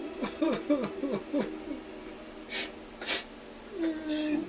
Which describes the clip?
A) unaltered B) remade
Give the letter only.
A